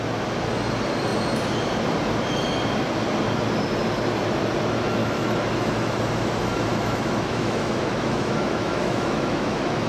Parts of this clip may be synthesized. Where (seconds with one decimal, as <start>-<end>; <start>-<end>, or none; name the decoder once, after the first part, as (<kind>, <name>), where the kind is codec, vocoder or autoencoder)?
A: 5.0-6.0 (autoencoder, DAC-VAE); 6.7-9.9